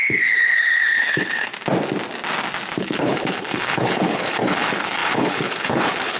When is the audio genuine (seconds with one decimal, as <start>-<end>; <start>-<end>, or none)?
1.5-2.8